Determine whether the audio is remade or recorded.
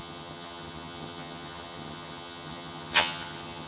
remade